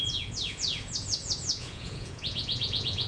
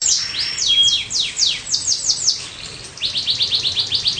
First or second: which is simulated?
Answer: first